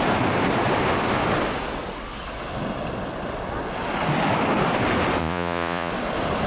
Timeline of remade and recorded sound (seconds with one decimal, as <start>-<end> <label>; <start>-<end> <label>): 0.0-5.2 recorded; 5.2-5.9 remade; 5.9-6.5 recorded